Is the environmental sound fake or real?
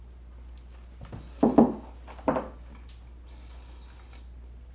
real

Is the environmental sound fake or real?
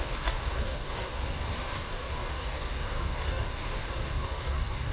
fake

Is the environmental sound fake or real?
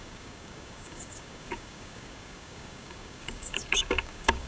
fake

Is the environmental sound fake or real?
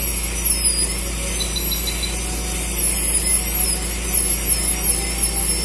real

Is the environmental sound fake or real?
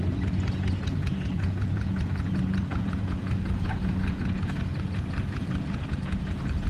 fake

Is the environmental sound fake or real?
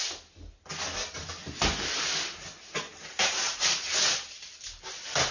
real